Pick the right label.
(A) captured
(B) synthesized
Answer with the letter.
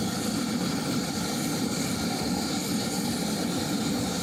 A